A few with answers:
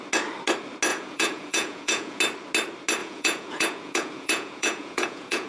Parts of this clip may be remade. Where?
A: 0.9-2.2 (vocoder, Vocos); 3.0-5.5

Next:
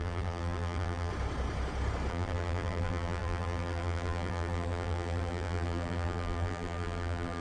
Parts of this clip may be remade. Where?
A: 0.0-1.1 (vocoder, BigVGAN v2); 2.1-7.4

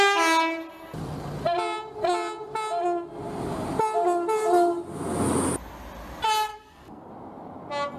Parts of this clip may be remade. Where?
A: 6.5-7.1 (codec, SNAC)